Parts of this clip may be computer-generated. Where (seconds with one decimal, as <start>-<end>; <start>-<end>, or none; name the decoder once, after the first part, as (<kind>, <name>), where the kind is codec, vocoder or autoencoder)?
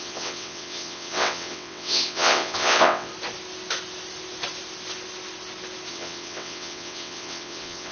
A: 0.0-3.1 (vocoder, WaveNeXt); 5.9-7.9